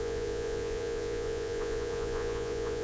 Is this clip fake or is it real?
fake